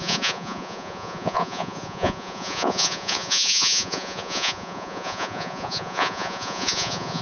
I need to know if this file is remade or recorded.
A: remade